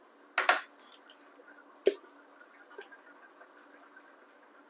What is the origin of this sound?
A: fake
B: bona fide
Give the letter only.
B